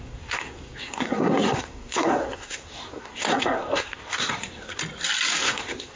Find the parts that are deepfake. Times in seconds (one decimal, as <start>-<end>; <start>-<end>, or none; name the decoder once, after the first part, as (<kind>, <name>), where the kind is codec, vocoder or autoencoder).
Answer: 0.0-4.8 (codec, SNAC); 5.4-6.0